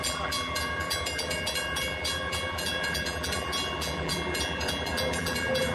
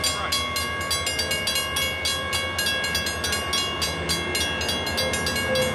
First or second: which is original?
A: second